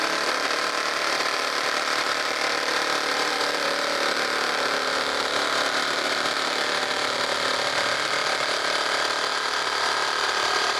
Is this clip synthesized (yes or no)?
yes